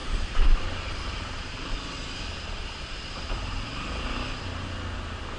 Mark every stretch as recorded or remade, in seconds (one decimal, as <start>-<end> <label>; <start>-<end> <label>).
0.0-1.7 remade; 1.7-5.4 recorded